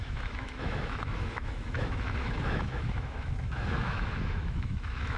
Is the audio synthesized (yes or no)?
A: yes